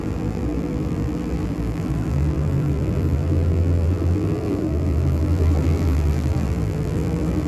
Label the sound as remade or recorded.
remade